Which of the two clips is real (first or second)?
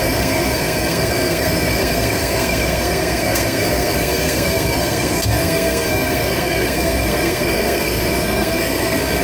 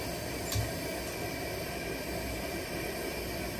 second